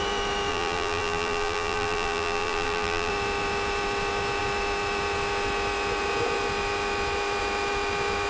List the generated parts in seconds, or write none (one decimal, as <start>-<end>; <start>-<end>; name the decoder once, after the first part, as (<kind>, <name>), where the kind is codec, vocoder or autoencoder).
0.5-3.1 (vocoder, BigVGAN v2)